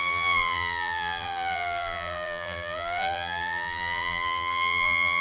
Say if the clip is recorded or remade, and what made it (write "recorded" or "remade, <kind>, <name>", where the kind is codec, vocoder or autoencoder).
remade, vocoder, BigVGAN v2